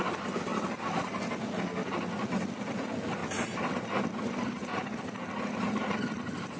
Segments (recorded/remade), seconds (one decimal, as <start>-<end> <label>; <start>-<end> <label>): 0.0-6.6 recorded